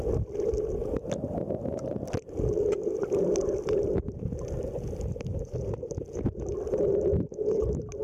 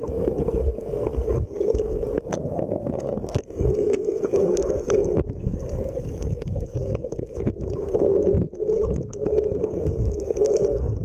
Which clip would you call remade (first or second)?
second